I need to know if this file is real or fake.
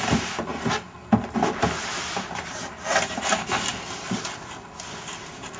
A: real